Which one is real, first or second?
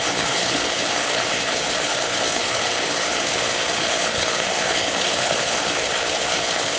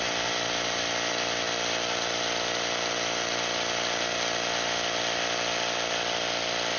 second